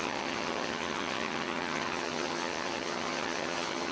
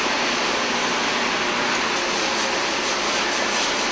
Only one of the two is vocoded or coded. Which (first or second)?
first